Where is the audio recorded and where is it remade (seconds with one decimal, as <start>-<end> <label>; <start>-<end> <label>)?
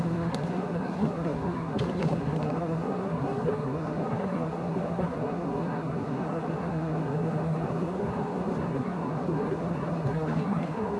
0.0-11.0 remade